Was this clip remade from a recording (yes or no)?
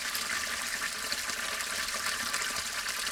no